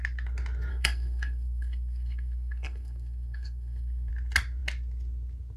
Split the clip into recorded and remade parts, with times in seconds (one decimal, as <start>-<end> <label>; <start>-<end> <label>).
0.0-0.7 recorded; 0.7-4.1 remade; 4.1-5.6 recorded